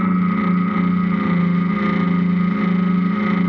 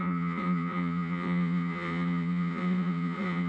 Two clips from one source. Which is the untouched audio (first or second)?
first